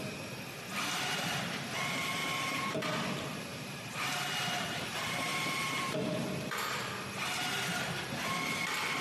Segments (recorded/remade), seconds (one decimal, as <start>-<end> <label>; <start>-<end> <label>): 0.0-2.2 recorded; 2.2-2.8 remade; 2.8-3.5 recorded; 3.5-4.1 remade; 4.1-5.3 recorded; 5.3-6.0 remade; 6.0-9.0 recorded